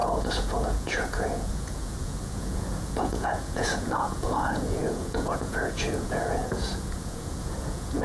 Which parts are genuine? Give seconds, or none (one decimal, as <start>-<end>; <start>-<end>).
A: none